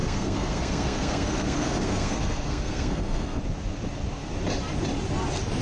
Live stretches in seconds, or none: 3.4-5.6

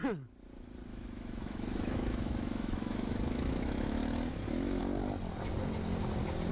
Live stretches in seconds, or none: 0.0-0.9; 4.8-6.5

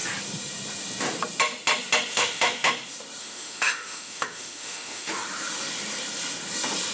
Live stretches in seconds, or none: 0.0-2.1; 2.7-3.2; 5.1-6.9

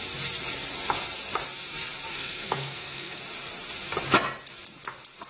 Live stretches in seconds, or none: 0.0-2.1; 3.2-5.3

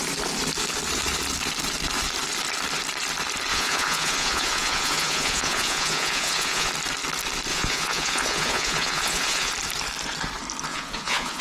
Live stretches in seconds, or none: 0.0-3.5; 6.7-7.5; 9.5-10.7